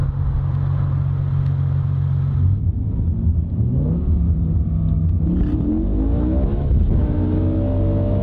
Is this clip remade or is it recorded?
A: recorded